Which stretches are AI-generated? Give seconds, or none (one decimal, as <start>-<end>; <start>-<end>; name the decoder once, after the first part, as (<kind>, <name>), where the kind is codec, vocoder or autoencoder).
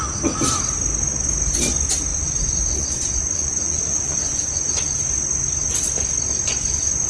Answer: 2.1-5.0 (vocoder, Vocos)